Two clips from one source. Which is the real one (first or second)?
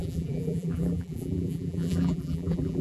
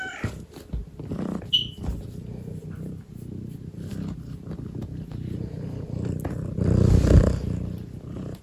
second